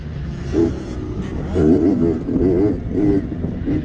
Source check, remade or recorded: recorded